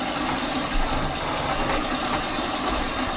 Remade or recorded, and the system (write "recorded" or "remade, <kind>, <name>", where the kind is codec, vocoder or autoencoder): recorded